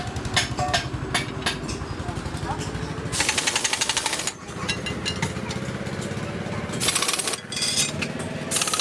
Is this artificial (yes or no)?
no